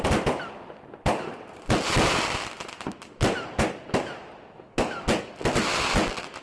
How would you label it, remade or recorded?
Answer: recorded